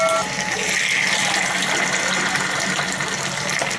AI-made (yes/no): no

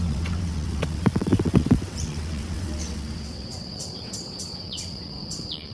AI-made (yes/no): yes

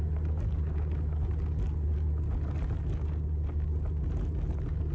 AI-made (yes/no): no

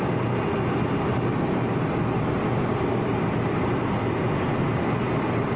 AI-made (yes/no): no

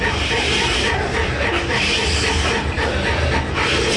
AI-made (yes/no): no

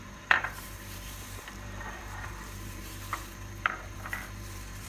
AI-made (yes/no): yes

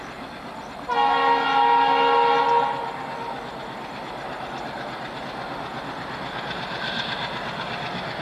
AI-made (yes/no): no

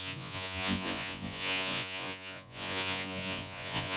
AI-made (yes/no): yes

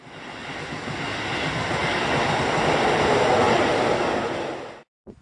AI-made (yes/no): no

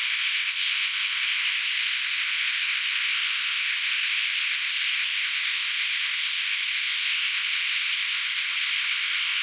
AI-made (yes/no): yes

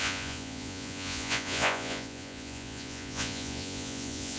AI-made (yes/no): yes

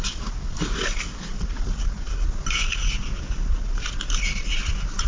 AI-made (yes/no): no